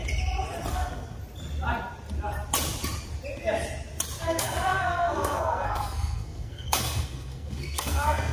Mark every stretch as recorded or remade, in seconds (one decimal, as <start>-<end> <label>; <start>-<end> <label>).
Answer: 0.0-0.7 recorded; 0.7-1.2 remade; 1.2-4.2 recorded; 4.2-8.3 remade